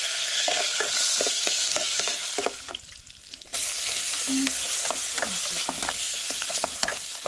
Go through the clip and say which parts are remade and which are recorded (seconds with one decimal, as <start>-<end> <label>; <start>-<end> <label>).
0.0-0.6 remade; 0.6-1.3 recorded; 1.3-2.2 remade; 2.2-3.2 recorded; 3.2-4.6 remade; 4.6-5.9 recorded; 5.9-7.3 remade